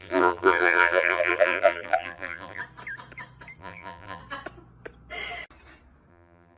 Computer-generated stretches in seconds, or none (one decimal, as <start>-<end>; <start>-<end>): 0.0-2.6; 3.6-4.2; 6.1-6.6